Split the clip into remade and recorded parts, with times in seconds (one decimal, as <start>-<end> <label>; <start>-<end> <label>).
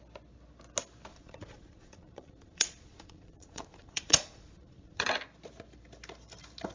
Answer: 0.0-1.1 recorded; 1.1-5.1 remade; 5.1-6.7 recorded